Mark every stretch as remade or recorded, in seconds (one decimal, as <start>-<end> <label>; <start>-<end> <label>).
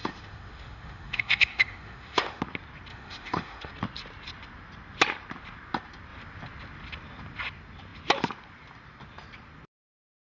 0.0-2.4 remade; 2.4-2.9 recorded; 2.9-3.7 remade; 3.7-10.4 recorded